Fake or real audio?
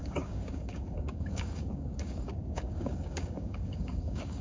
fake